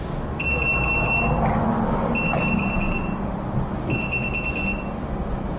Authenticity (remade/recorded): recorded